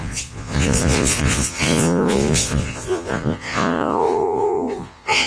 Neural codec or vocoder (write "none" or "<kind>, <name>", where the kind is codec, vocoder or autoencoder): vocoder, Vocos